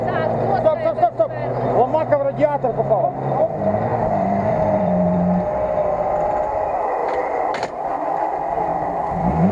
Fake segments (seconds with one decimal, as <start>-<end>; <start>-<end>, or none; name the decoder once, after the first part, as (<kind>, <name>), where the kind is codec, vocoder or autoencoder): 3.9-5.5 (vocoder, BigVGAN v2); 7.0-7.7; 8.7-9.5